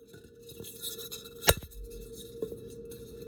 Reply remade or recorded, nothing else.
recorded